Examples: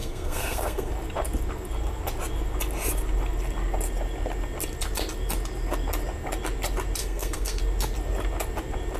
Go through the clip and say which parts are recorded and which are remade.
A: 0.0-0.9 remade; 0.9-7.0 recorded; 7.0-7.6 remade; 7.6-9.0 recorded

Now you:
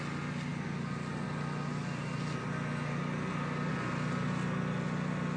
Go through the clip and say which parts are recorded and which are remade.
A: 0.0-5.4 recorded

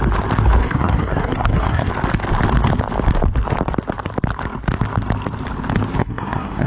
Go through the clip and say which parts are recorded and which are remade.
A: 0.0-0.6 recorded; 0.6-1.9 remade; 1.9-6.0 recorded; 6.0-6.7 remade

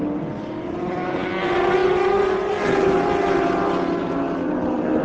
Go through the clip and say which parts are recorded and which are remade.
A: 0.0-5.0 recorded

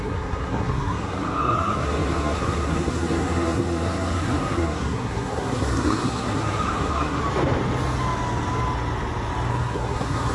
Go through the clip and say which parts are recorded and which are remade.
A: 0.0-7.2 remade; 7.2-9.5 recorded; 9.5-10.3 remade

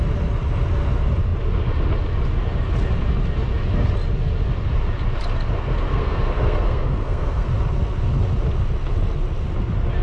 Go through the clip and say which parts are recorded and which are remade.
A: 0.0-5.9 recorded; 5.9-7.5 remade; 7.5-10.0 recorded